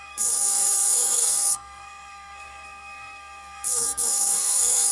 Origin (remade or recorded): remade